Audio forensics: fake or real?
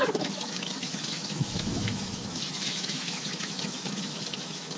fake